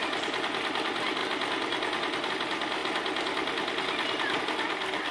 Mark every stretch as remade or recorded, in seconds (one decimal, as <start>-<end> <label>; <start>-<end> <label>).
0.0-5.1 recorded